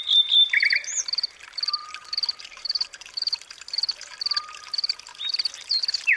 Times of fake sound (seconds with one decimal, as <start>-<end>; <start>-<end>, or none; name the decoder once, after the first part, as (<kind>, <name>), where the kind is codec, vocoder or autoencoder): 1.8-4.2 (vocoder, BigVGAN v2)